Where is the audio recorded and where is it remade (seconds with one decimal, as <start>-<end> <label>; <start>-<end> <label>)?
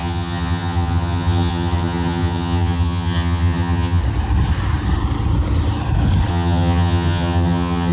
0.0-4.0 remade; 4.0-6.3 recorded; 6.3-7.9 remade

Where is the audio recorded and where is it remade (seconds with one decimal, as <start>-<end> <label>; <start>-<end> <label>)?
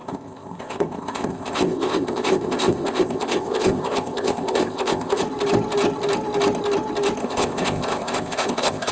0.0-5.2 remade; 5.2-7.2 recorded; 7.2-8.9 remade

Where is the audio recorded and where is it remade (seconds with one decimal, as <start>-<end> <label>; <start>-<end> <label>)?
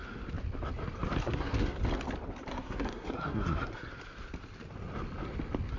0.0-1.2 recorded; 1.2-1.8 remade; 1.8-2.5 recorded; 2.5-3.9 remade; 3.9-5.8 recorded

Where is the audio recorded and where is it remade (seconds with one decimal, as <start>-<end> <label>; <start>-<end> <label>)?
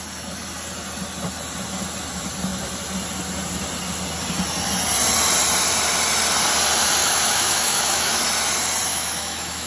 0.0-7.0 recorded; 7.0-8.2 remade; 8.2-8.9 recorded; 8.9-9.7 remade